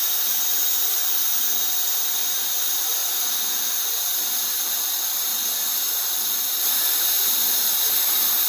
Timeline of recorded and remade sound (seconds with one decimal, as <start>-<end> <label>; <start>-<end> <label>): 0.0-1.0 remade; 1.0-2.5 recorded; 2.5-3.0 remade; 3.0-3.7 recorded; 3.7-5.3 remade; 5.3-5.9 recorded; 5.9-8.5 remade